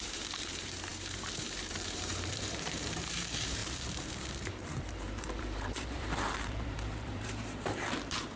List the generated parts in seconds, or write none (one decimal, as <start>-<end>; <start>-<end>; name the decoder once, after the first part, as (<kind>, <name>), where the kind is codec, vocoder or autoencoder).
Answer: 0.0-8.4 (vocoder, BigVGAN v2)